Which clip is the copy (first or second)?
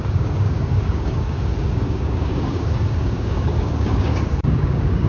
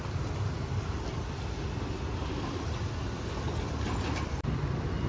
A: first